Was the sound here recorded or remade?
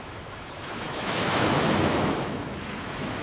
remade